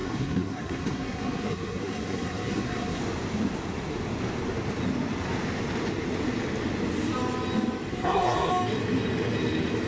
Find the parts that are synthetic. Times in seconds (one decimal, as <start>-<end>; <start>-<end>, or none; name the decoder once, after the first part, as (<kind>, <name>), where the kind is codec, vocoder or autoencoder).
0.0-3.0 (codec, SNAC); 7.9-8.5